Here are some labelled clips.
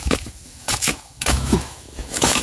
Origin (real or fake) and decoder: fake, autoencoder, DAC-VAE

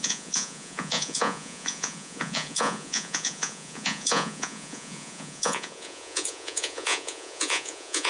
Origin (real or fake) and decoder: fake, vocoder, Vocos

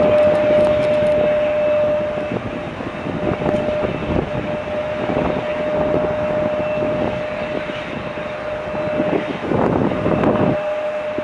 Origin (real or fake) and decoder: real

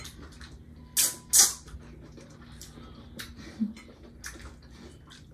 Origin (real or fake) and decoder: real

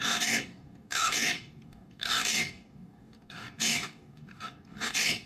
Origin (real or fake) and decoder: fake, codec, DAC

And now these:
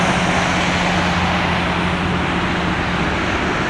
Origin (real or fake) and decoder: real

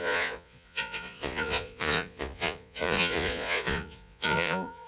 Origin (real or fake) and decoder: fake, vocoder, Vocos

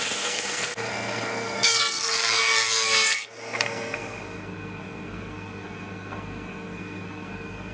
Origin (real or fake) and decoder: fake, codec, SNAC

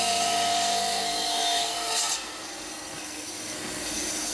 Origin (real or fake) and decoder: fake, codec, SNAC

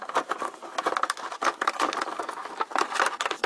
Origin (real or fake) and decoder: real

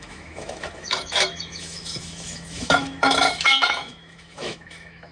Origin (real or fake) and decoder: fake, autoencoder, DAC-VAE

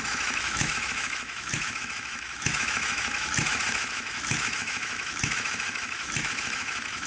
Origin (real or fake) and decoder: fake, autoencoder, DAC-VAE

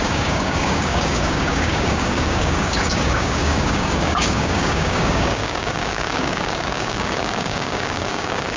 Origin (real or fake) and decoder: fake, codec, DAC